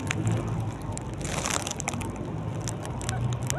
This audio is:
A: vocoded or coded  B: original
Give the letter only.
B